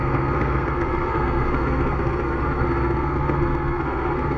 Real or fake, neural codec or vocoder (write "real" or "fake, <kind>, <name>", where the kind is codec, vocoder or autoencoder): fake, codec, SNAC